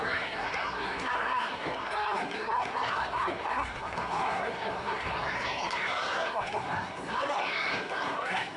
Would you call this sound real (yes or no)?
no